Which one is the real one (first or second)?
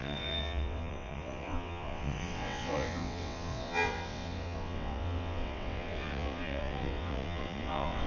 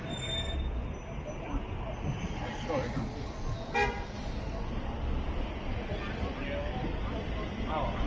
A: second